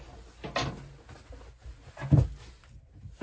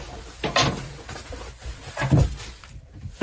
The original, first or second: first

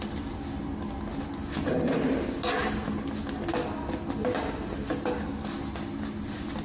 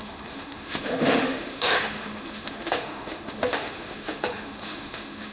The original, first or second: first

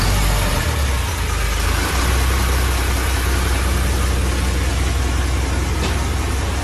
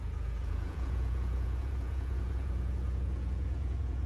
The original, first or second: first